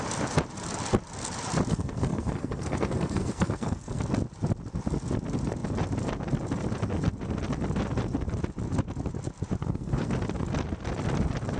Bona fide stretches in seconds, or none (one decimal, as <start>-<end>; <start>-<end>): 0.0-1.7; 4.0-9.6; 10.1-11.6